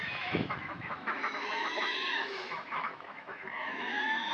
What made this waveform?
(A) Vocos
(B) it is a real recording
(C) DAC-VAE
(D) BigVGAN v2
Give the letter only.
C